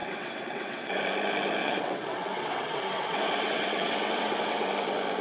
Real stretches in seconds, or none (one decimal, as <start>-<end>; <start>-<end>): 1.0-1.6; 4.7-5.2